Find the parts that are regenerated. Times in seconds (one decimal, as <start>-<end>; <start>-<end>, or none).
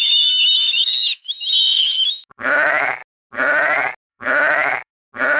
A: 0.0-3.0; 4.1-4.9